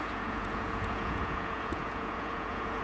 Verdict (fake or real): fake